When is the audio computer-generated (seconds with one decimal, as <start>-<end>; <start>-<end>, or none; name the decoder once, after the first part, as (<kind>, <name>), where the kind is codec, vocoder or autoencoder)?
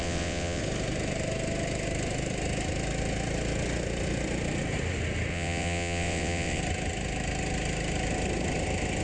0.0-0.6 (vocoder, WaveNeXt); 5.3-6.6